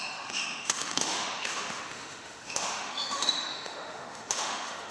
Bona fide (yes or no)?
no